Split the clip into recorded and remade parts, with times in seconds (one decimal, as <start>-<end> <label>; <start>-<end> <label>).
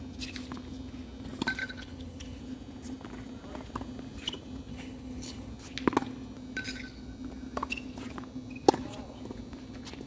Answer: 0.0-1.6 recorded; 1.6-2.4 remade; 2.4-4.7 recorded; 4.7-5.5 remade; 5.5-10.1 recorded